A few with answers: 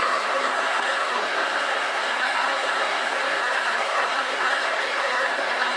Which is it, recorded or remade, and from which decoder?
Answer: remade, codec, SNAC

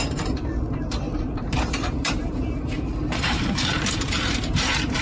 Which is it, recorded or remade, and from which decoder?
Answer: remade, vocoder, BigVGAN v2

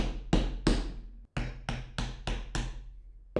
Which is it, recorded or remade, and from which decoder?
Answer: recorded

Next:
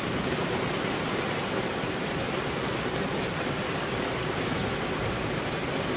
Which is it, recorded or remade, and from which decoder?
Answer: recorded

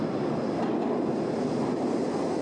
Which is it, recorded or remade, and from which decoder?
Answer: recorded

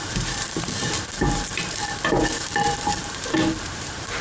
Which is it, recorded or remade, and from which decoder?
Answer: remade, vocoder, BigVGAN v2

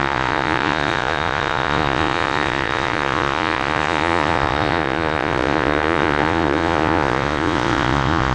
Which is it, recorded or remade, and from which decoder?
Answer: remade, vocoder, Vocos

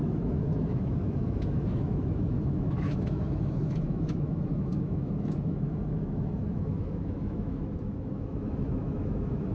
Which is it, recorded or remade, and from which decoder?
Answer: remade, autoencoder, DAC-VAE